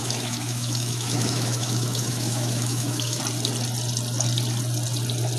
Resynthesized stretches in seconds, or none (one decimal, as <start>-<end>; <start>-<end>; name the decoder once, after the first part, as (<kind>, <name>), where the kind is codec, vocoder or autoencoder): 0.0-3.2 (autoencoder, DAC-VAE)